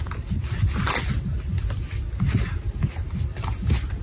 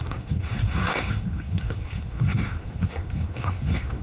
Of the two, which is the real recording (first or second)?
first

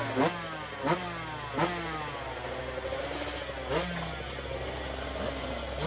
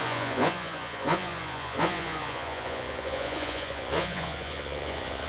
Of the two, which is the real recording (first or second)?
first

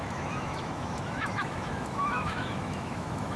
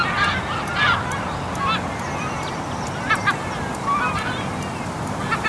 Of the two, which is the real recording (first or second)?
second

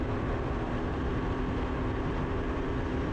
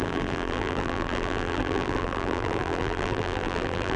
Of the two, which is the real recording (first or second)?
first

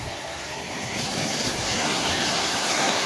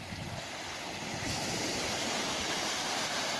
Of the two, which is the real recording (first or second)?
second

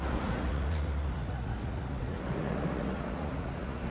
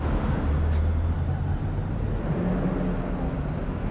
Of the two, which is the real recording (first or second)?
second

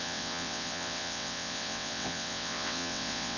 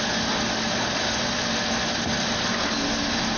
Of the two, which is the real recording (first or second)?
second